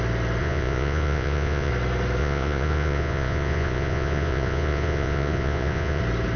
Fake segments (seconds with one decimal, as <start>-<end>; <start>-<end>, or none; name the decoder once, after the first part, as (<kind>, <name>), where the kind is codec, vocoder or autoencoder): 0.4-1.7 (vocoder, Vocos); 2.2-6.0